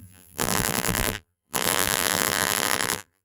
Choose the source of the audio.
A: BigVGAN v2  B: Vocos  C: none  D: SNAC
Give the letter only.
A